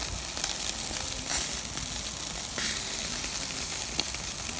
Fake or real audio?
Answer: real